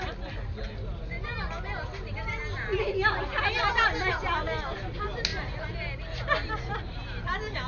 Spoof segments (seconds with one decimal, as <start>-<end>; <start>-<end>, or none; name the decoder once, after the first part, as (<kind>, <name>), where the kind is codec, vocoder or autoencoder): none